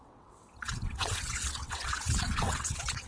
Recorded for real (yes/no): no